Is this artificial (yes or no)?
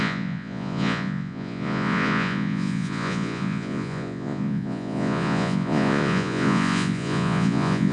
yes